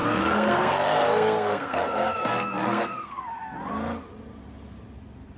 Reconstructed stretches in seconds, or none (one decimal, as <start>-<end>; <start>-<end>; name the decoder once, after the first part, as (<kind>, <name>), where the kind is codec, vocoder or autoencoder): 0.0-3.2 (codec, SNAC)